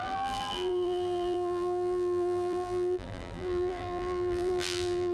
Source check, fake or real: fake